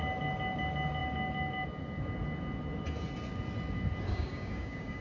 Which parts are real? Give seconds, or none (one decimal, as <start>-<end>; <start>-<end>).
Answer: 0.0-4.1